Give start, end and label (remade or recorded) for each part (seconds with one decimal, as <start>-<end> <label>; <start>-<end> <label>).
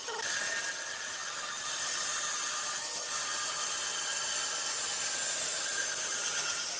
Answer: 0.0-1.2 recorded; 1.2-3.8 remade; 3.8-6.8 recorded